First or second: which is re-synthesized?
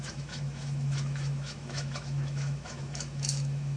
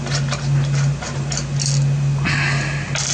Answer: first